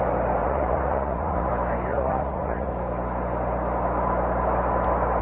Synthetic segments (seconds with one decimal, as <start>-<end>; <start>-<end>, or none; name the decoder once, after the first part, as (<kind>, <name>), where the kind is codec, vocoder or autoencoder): 0.4-1.5 (vocoder, Vocos); 1.9-2.7